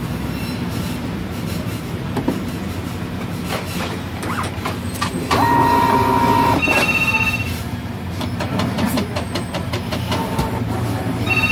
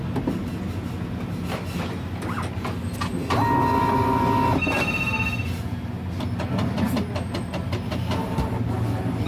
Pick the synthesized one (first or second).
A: first